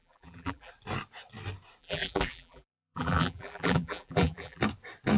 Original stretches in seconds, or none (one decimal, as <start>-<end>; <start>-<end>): 0.7-1.8; 4.6-5.2

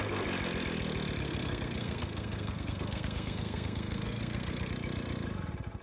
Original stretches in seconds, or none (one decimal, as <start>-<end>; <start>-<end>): 0.0-1.2; 4.7-5.8

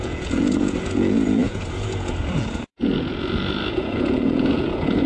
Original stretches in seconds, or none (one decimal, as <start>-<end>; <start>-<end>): none

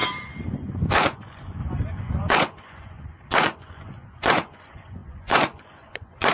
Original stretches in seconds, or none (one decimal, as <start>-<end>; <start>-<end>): 0.0-0.5